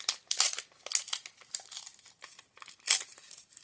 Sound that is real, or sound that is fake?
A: real